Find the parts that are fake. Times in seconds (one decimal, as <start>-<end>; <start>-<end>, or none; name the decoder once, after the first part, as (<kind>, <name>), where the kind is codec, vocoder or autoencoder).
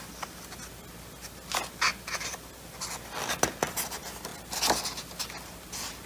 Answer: none